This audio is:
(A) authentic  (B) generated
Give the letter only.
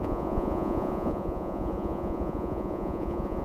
B